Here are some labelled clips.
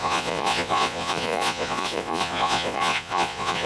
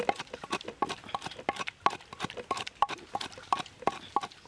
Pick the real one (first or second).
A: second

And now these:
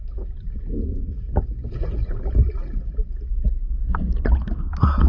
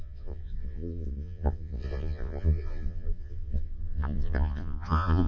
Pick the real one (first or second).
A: first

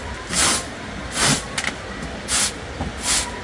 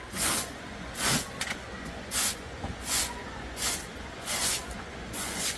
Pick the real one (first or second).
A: first